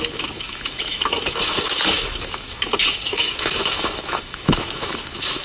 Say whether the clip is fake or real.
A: fake